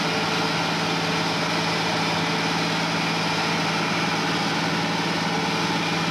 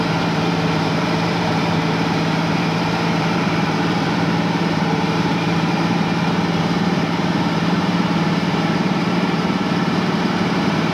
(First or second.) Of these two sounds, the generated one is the second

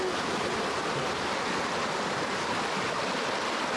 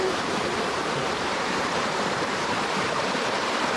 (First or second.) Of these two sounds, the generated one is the second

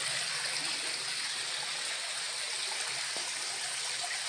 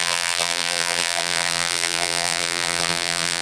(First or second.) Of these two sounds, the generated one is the second